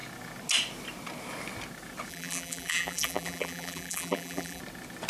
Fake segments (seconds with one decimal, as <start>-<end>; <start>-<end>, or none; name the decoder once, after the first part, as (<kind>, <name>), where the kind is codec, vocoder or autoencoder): 2.1-4.6 (vocoder, BigVGAN v2)